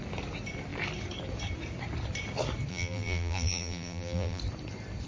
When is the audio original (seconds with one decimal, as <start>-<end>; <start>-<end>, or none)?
0.0-2.7; 4.4-5.1